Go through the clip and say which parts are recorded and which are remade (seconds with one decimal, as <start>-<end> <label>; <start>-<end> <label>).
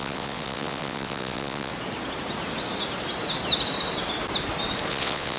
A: 0.0-1.7 remade; 1.7-4.9 recorded; 4.9-5.4 remade